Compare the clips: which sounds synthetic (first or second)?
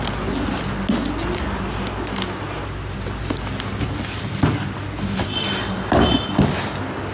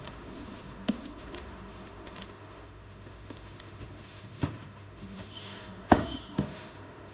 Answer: second